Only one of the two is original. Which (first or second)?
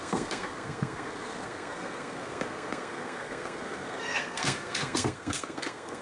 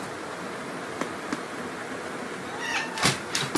second